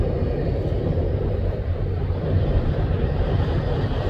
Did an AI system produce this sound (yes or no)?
yes